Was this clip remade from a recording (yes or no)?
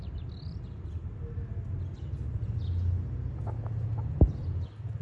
no